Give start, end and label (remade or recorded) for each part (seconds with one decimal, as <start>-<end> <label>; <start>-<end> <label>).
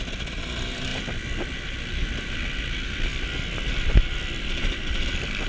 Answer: 0.0-5.5 recorded